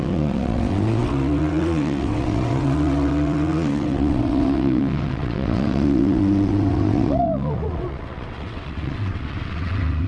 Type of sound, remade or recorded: remade